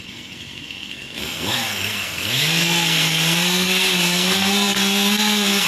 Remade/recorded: remade